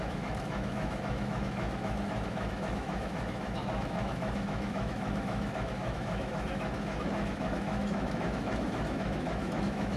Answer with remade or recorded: remade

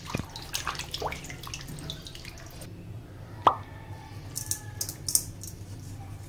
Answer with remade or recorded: recorded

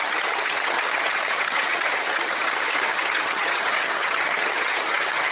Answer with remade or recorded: remade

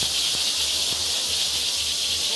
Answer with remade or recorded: recorded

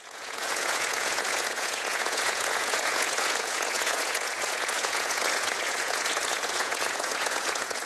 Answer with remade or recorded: remade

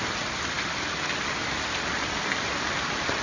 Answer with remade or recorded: recorded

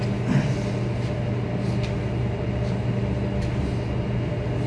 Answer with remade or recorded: recorded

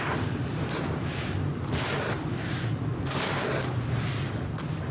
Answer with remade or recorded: recorded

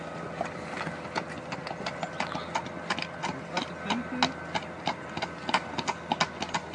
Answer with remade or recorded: recorded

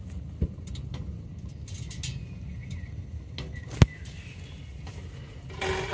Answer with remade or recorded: recorded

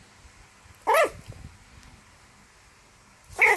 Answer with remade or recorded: recorded